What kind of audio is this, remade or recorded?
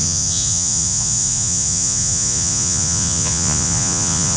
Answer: remade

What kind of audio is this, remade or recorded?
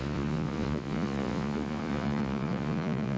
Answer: remade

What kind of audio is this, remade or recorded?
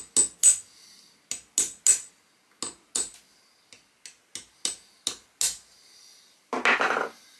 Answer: recorded